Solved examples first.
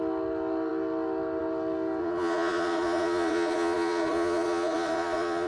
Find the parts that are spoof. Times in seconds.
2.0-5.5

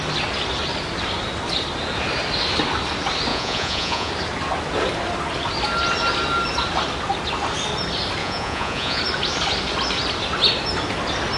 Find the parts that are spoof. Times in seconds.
3.3-4.1; 8.2-9.0

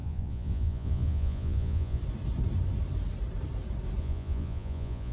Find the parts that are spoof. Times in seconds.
0.0-2.0; 4.0-5.1